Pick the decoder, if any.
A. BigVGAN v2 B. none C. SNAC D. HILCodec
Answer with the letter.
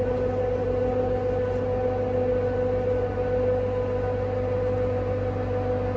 B